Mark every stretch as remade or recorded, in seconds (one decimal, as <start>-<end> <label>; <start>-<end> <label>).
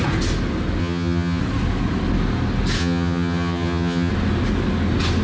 0.0-0.8 recorded; 0.8-1.4 remade; 1.4-2.8 recorded; 2.8-4.1 remade; 4.1-5.2 recorded